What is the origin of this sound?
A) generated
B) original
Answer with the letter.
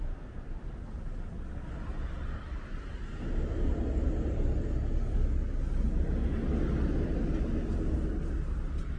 B